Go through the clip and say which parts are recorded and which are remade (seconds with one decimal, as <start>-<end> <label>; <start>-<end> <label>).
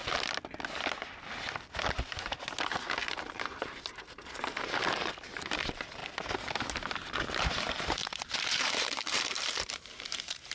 0.0-3.2 recorded; 3.2-6.0 remade; 6.0-7.4 recorded; 7.4-8.0 remade; 8.0-8.5 recorded; 8.5-10.5 remade